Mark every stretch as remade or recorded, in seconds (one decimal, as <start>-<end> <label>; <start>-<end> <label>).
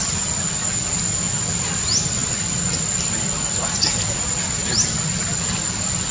0.0-6.1 recorded